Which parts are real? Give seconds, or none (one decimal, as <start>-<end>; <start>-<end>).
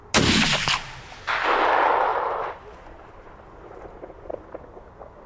0.0-2.1; 3.8-5.3